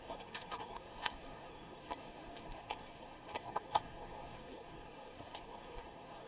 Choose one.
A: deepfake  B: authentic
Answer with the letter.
A